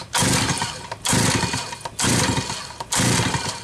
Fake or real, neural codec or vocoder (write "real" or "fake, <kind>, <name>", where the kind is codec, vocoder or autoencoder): real